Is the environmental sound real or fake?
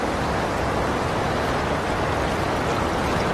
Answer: real